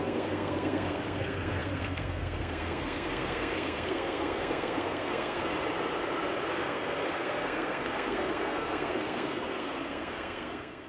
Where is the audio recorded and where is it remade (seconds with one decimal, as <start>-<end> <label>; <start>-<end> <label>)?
0.0-5.5 remade; 5.5-6.5 recorded; 6.5-10.9 remade